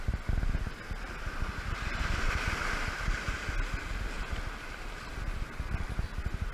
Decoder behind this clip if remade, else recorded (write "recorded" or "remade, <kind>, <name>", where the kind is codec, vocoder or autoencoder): recorded